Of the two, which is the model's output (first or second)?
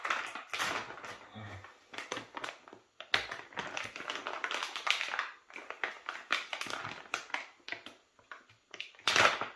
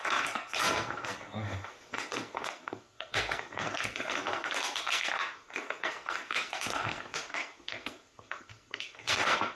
second